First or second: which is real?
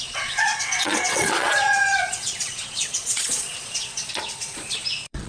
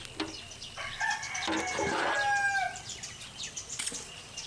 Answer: second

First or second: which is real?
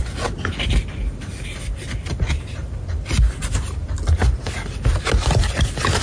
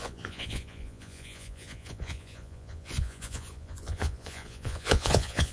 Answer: first